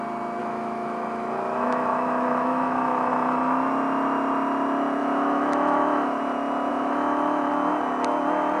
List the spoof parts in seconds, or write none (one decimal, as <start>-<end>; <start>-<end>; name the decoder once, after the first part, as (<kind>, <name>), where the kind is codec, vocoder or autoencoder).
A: 0.4-3.1 (autoencoder, DAC-VAE); 5.0-6.2; 6.7-7.5